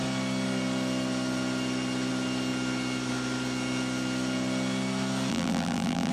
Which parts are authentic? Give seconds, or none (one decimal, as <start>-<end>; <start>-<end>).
0.0-5.3